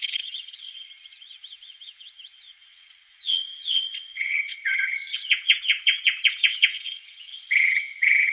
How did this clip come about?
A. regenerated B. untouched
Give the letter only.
A